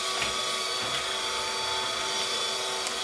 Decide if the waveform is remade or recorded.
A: recorded